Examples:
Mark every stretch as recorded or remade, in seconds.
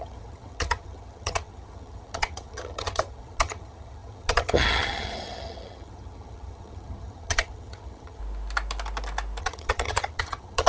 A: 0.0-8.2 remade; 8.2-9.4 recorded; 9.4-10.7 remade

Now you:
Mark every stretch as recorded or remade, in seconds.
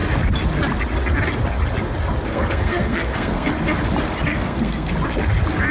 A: 0.0-2.3 recorded; 2.3-3.5 remade; 3.5-4.3 recorded; 4.3-4.9 remade; 4.9-5.7 recorded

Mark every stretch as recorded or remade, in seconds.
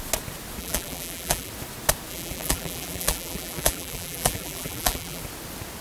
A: 0.0-0.6 recorded; 0.6-1.5 remade; 1.5-2.1 recorded; 2.1-5.2 remade; 5.2-5.8 recorded